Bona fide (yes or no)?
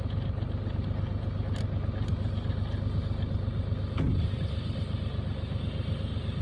yes